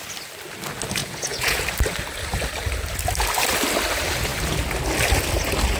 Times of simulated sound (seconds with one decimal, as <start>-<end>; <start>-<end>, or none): 1.0-1.6